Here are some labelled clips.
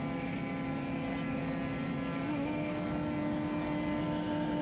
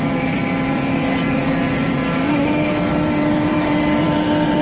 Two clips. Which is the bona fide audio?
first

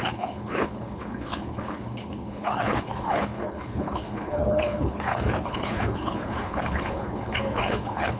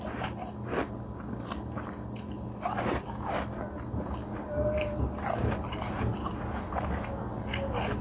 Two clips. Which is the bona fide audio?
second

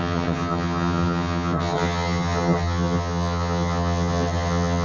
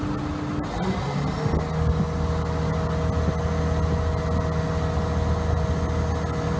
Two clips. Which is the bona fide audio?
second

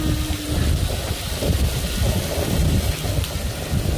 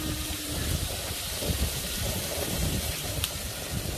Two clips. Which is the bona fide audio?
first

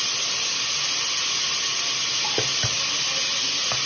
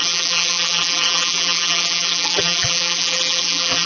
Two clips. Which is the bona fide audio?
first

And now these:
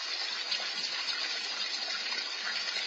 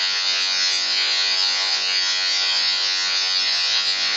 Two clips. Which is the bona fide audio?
first